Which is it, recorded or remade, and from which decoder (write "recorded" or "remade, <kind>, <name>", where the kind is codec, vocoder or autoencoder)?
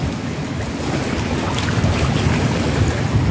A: recorded